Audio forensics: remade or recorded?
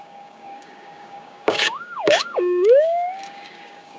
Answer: remade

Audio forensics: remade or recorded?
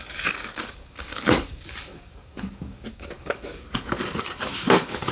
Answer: remade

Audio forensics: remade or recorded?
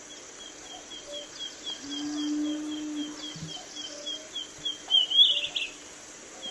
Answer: recorded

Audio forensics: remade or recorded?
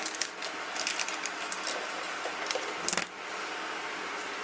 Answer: recorded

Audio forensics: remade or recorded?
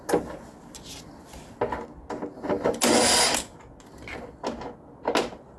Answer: recorded